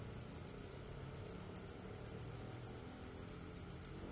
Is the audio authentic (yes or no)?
yes